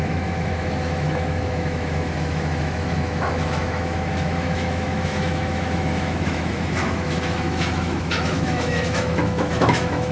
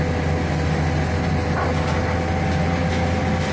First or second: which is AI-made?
first